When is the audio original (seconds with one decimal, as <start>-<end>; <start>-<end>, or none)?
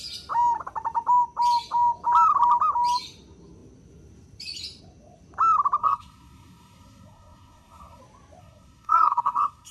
0.0-5.8; 8.0-8.4